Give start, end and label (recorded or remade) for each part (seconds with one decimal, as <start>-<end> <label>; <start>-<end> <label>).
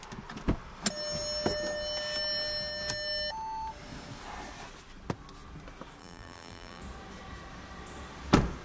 0.0-6.0 recorded; 6.0-6.8 remade; 6.8-8.6 recorded